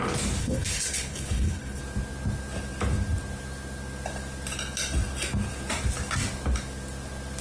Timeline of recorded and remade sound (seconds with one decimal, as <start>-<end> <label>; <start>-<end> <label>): 0.0-0.4 recorded; 0.4-1.8 remade; 1.8-7.4 recorded